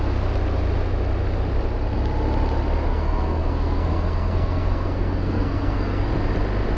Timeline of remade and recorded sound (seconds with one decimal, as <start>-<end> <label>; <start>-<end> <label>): 0.0-2.9 recorded; 2.9-6.1 remade; 6.1-6.8 recorded